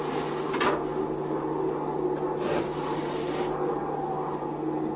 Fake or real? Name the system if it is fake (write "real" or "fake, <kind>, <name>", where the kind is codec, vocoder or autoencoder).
real